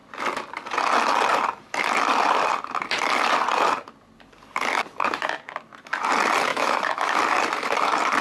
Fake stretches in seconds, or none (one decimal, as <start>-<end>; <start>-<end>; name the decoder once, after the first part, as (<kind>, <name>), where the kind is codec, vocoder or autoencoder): 6.5-7.2 (autoencoder, DAC-VAE)

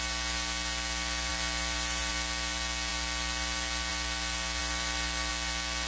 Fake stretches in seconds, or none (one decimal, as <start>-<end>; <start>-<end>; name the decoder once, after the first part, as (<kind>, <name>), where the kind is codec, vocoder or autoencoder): 1.3-2.1 (vocoder, BigVGAN v2); 4.6-5.3

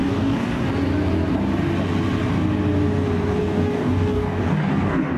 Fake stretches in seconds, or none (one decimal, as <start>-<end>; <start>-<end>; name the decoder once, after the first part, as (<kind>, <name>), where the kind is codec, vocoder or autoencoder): 0.0-0.6 (codec, DAC); 3.4-5.2

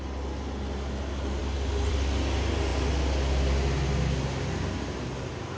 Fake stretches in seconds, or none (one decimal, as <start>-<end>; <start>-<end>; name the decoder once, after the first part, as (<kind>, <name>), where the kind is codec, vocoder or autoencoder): none